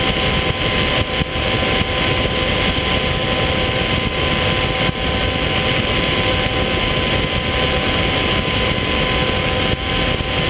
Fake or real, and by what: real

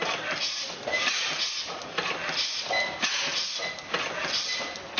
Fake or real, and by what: real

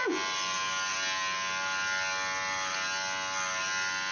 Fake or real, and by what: real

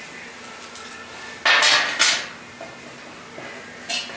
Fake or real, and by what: real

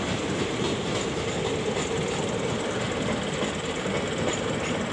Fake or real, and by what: real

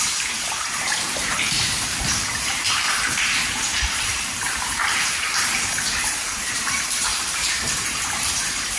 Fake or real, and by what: fake, vocoder, BigVGAN v2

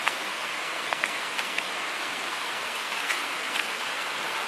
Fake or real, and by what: fake, codec, SNAC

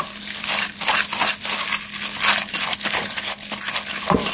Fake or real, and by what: real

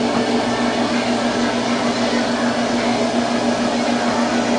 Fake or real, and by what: real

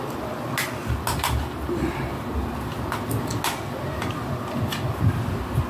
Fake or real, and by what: real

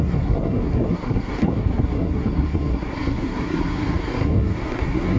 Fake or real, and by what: fake, codec, SNAC